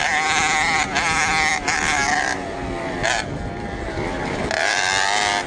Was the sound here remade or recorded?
recorded